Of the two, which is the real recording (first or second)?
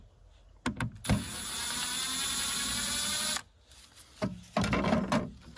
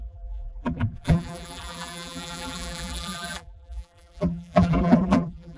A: first